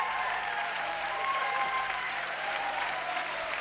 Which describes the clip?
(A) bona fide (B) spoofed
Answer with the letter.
B